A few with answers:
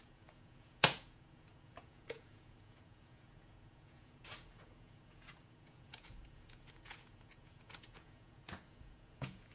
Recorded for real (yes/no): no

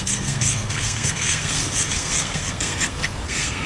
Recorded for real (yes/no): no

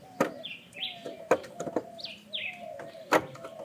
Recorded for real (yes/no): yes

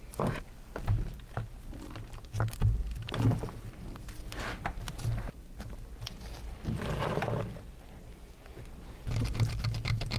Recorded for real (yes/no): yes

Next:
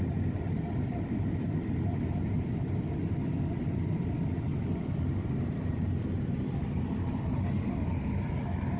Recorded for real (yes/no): yes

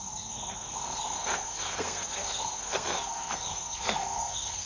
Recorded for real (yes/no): no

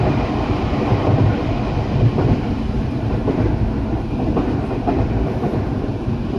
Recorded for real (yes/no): no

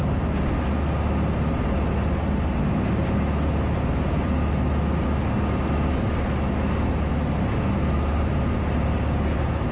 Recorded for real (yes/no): yes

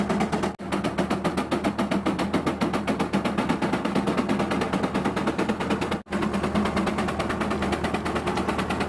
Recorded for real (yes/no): yes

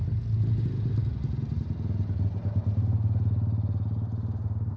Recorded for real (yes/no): yes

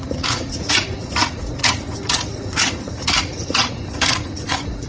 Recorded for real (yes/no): no